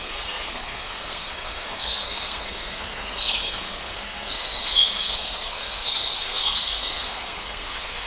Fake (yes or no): yes